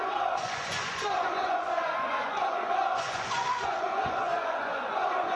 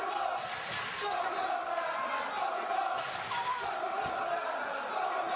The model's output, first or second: first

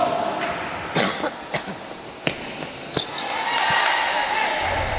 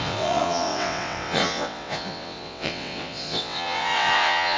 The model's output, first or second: second